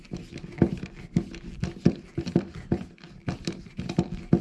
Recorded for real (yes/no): yes